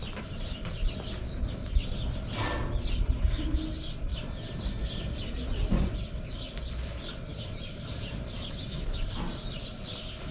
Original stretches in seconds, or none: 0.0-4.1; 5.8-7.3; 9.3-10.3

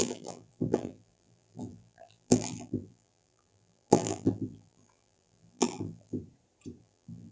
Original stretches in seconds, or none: 6.2-6.8

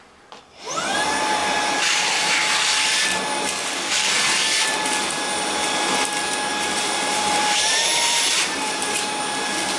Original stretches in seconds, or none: 0.0-1.4; 2.0-6.5; 9.2-9.8